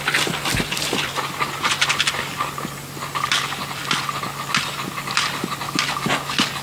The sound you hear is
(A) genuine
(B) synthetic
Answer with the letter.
A